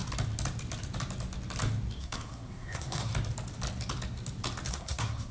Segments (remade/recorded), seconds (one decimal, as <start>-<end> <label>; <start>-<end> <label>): 0.0-2.0 recorded; 2.0-3.1 remade; 3.1-4.7 recorded; 4.7-5.3 remade